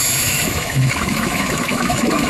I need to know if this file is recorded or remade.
remade